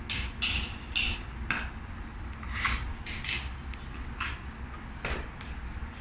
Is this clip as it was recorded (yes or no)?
yes